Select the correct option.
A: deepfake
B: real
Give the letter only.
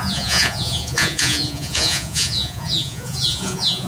A